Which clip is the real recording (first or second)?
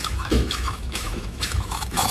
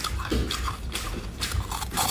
second